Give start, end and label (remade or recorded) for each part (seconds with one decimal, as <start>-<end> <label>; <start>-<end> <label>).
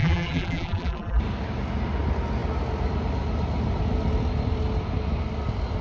0.0-1.2 remade; 1.2-5.8 recorded